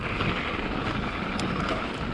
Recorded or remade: recorded